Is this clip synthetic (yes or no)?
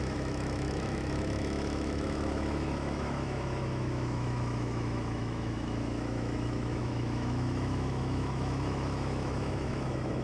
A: yes